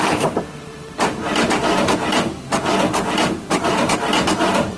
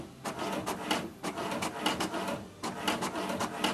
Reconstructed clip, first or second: first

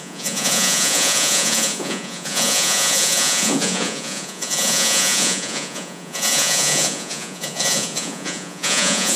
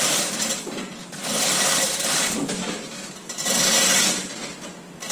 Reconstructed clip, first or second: first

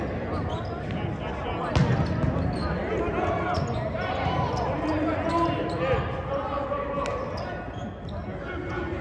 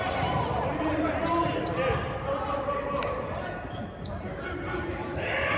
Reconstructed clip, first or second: second